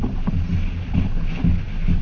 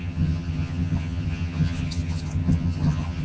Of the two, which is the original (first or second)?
first